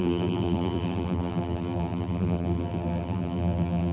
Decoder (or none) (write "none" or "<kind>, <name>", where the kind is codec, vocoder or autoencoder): vocoder, BigVGAN v2